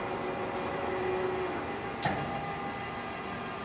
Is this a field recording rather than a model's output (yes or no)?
yes